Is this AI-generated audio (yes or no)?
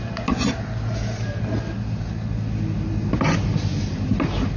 no